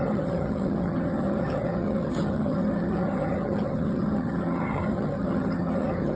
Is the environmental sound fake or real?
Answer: fake